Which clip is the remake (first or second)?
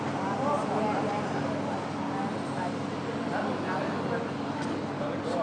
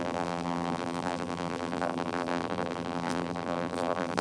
second